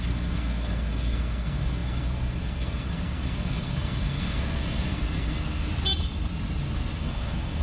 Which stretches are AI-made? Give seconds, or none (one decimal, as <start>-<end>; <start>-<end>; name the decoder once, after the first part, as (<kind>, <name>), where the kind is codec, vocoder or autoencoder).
0.0-5.7 (codec, SNAC); 7.0-7.6